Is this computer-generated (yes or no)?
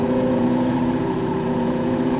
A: yes